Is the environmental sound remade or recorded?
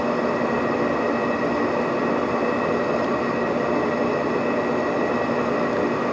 recorded